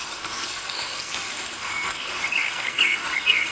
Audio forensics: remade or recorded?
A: remade